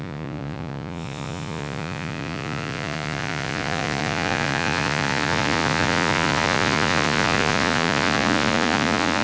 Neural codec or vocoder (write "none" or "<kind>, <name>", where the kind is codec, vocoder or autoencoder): vocoder, Vocos